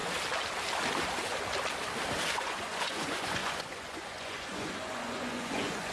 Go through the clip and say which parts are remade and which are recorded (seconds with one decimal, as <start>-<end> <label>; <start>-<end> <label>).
0.0-2.3 recorded; 2.3-5.9 remade